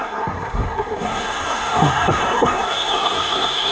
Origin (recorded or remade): remade